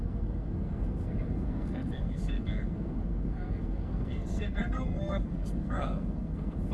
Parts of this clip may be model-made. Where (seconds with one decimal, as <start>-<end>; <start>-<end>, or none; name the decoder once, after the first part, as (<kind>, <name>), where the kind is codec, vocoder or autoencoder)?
0.0-6.7 (codec, SNAC)